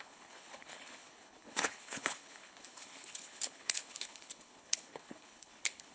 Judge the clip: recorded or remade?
remade